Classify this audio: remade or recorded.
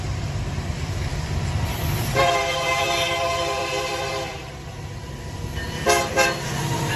remade